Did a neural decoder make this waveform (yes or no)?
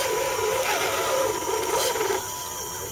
no